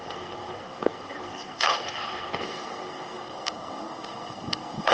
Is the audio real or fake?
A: fake